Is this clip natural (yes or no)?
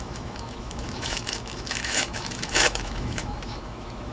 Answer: no